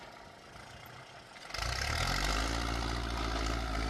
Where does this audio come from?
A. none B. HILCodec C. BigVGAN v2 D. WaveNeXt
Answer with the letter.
A